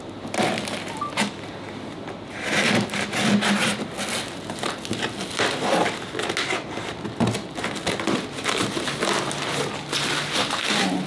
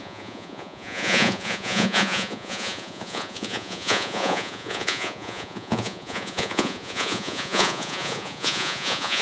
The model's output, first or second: second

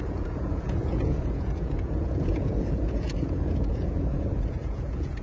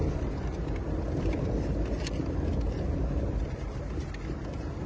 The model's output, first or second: first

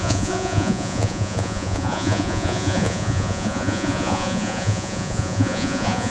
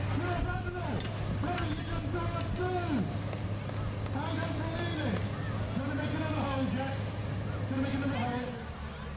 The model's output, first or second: first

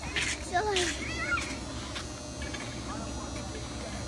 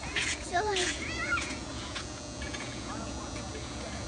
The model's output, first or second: second